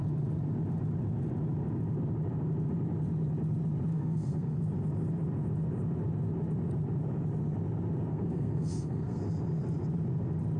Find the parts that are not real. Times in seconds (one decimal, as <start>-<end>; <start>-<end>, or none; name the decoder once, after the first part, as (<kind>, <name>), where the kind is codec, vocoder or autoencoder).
3.9-4.6 (codec, SNAC); 8.1-9.2